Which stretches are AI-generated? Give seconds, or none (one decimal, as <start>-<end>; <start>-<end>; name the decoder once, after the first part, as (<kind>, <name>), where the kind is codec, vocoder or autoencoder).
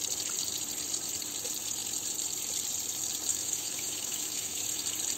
3.3-4.8 (autoencoder, DAC-VAE)